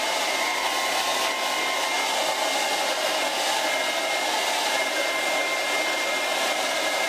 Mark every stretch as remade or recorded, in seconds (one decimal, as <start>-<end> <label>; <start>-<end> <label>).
0.0-6.3 recorded; 6.3-7.1 remade